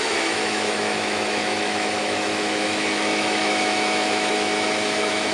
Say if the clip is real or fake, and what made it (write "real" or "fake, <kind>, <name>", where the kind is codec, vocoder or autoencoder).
fake, autoencoder, DAC-VAE